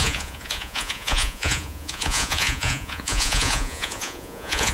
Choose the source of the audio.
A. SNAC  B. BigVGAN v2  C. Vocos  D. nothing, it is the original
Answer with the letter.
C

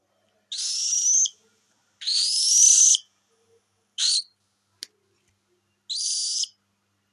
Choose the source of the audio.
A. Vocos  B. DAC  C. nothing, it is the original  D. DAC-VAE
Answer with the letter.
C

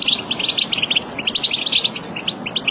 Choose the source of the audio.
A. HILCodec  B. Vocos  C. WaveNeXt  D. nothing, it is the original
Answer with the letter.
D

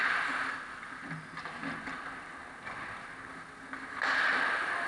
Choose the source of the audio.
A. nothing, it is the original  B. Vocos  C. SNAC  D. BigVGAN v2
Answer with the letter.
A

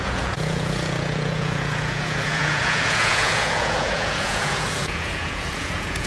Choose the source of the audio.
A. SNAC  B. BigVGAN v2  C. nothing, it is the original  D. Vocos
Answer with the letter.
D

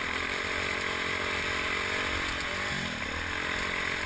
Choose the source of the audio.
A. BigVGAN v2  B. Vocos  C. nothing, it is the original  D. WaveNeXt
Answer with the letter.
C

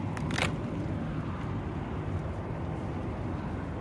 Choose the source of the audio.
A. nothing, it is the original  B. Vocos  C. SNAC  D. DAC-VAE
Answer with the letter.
A